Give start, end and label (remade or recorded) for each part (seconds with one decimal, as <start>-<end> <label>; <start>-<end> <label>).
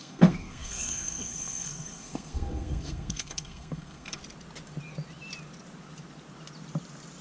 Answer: 0.0-4.2 remade; 4.2-7.2 recorded